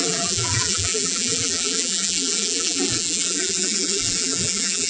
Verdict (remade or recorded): remade